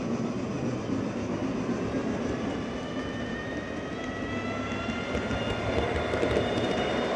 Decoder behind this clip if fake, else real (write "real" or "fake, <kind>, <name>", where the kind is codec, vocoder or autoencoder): real